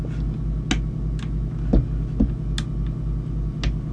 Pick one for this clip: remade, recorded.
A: recorded